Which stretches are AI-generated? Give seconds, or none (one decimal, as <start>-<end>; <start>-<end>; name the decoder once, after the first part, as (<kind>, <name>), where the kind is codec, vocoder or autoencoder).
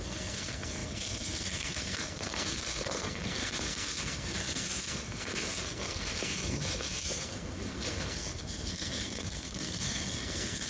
0.0-10.7 (codec, SNAC)